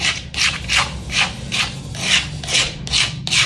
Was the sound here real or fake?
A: real